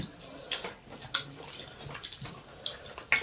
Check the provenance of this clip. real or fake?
real